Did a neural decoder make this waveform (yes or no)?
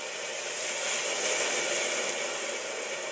no